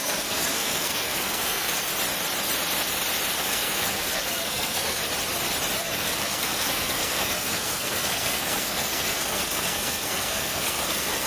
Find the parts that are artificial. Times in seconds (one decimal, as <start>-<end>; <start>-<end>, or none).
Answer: 0.0-1.9; 3.3-5.0; 5.8-11.3

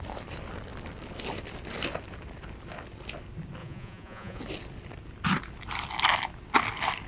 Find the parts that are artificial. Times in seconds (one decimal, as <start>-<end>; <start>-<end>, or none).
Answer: 3.6-4.4

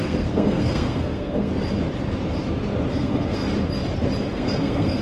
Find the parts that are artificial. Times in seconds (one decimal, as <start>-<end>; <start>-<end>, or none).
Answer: 0.0-1.5; 2.9-3.4; 4.3-5.0

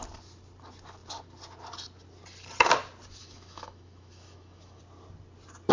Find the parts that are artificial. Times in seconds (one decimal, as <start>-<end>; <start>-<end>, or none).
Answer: 3.2-4.8

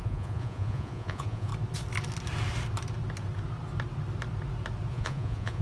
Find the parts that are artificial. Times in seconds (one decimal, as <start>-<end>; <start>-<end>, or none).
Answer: 0.0-1.5; 4.9-5.6

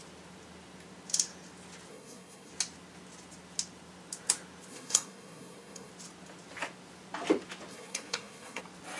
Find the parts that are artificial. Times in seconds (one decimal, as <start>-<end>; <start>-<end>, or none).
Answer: 1.9-2.5; 4.7-5.9; 7.7-8.6

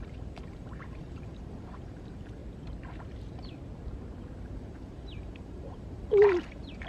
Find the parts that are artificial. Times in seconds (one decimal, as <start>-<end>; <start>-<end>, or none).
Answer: 0.0-2.4; 4.4-6.9